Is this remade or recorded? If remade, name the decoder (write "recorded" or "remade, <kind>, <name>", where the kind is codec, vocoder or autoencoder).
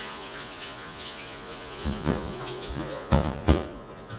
remade, vocoder, Vocos